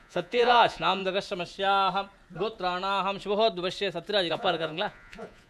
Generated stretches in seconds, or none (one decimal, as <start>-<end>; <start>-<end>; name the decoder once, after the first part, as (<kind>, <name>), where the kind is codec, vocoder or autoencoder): 0.0-1.0 (vocoder, Vocos); 4.3-5.5